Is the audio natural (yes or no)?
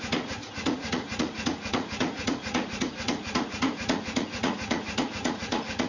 no